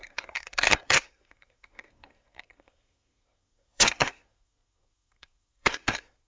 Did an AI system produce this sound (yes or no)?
yes